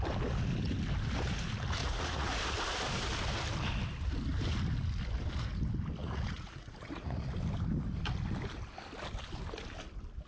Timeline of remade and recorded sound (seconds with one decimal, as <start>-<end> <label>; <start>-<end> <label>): 0.0-1.8 recorded; 1.8-2.4 remade; 2.4-6.0 recorded; 6.0-7.2 remade; 7.2-10.3 recorded